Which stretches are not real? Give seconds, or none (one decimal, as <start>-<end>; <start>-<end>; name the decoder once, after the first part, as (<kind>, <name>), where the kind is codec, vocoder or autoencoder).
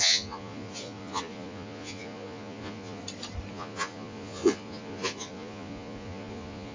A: 0.0-3.0 (vocoder, Vocos); 3.5-6.7